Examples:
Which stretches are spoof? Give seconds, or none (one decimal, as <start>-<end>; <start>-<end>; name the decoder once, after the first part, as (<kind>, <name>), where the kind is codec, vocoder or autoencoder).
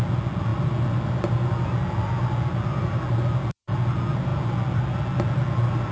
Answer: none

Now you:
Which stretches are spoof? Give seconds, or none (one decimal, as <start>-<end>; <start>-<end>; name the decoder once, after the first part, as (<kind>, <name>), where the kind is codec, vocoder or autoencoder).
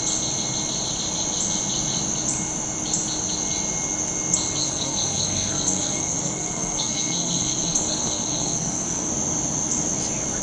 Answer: 4.6-9.1 (codec, SNAC)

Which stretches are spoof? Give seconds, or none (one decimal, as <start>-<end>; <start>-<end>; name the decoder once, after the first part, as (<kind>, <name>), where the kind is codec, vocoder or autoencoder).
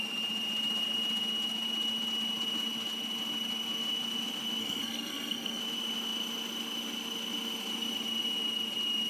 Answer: 4.6-5.6 (codec, SNAC)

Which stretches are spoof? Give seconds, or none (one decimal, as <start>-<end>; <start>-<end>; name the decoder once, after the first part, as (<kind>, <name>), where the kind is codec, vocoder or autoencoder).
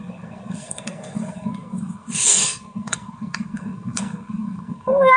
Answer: 0.0-5.2 (codec, SNAC)